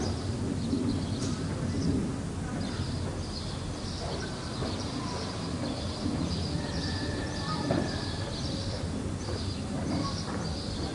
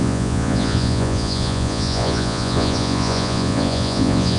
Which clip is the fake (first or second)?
second